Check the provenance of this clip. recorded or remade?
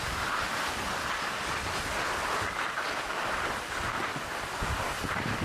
recorded